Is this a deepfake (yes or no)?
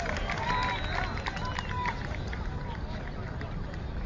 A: no